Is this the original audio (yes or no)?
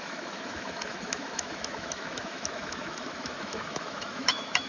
no